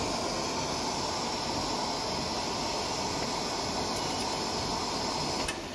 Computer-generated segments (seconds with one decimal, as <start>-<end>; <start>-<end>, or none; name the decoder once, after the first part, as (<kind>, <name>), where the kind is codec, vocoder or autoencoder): none